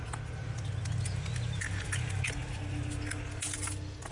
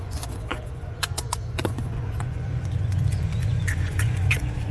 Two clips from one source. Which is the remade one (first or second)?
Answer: second